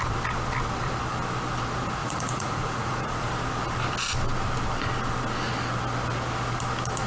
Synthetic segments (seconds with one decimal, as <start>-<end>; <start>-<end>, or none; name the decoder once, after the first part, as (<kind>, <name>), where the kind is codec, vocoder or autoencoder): 2.0-3.3 (vocoder, Vocos)